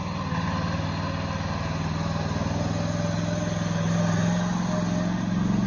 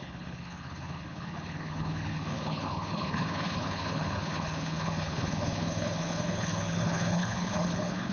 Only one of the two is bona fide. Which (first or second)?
first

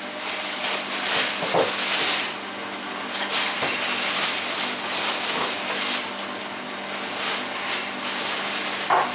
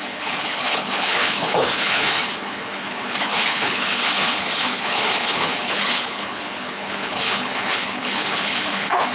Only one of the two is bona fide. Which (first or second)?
first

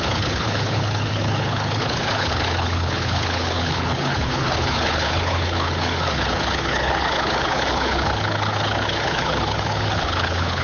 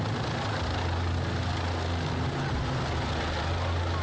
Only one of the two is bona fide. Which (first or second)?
second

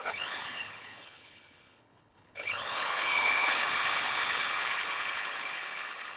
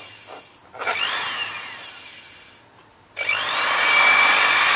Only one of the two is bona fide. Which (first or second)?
second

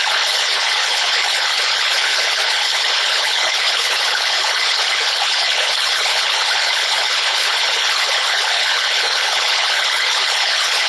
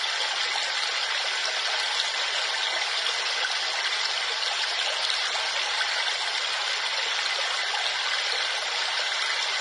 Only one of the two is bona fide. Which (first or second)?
second